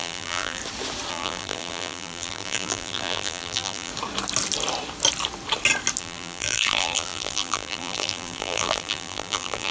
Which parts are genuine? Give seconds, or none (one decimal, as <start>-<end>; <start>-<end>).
0.6-1.1; 3.9-6.0